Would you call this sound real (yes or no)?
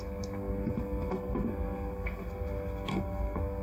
no